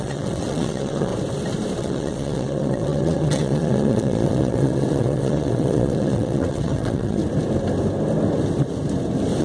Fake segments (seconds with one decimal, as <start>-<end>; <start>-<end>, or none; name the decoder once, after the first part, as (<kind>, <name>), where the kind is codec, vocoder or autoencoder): 0.0-1.1 (vocoder, WaveNeXt); 1.8-7.2